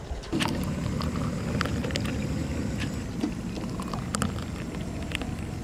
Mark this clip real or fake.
real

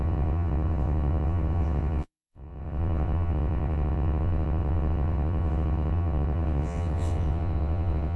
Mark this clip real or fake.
fake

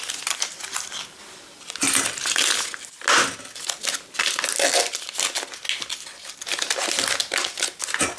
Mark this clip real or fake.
real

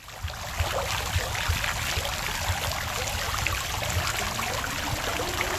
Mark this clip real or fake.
real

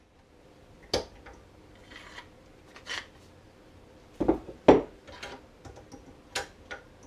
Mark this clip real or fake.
real